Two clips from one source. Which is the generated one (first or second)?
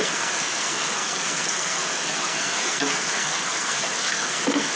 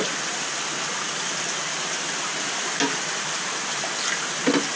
first